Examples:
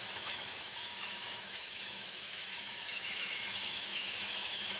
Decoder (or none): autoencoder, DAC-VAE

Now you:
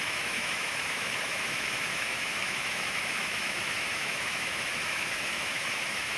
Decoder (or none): autoencoder, DAC-VAE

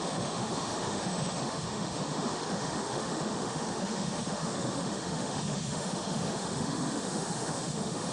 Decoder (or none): autoencoder, DAC-VAE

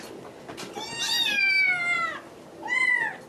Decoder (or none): none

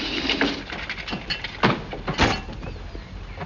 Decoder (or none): none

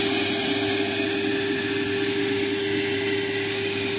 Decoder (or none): none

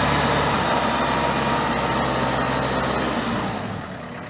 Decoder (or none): none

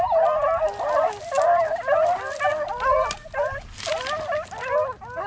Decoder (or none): none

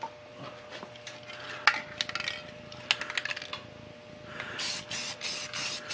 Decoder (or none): none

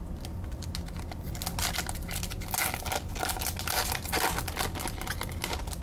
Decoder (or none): none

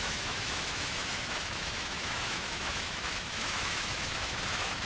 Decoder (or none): autoencoder, DAC-VAE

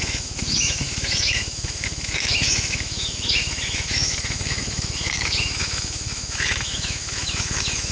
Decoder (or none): autoencoder, DAC-VAE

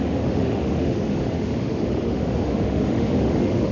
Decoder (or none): autoencoder, DAC-VAE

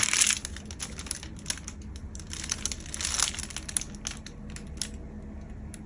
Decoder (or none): none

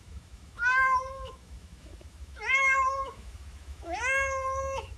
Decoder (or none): autoencoder, DAC-VAE